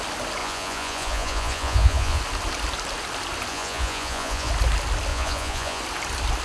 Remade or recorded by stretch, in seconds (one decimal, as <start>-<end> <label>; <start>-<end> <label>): 0.0-0.4 recorded; 0.4-2.2 remade; 2.2-3.5 recorded; 3.5-4.5 remade; 4.5-5.1 recorded; 5.1-5.8 remade; 5.8-6.4 recorded